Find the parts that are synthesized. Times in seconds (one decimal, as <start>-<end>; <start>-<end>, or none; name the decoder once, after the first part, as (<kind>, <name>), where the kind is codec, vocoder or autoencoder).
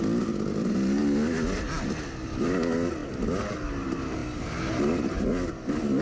none